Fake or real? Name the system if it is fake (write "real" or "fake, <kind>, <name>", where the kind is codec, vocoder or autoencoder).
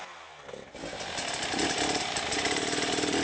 real